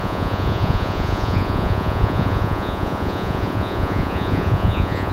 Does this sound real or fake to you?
fake